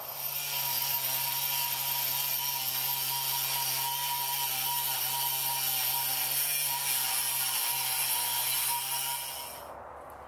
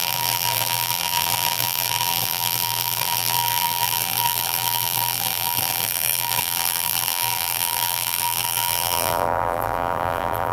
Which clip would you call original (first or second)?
first